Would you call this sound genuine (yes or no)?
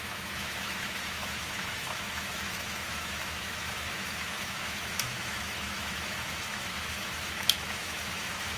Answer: no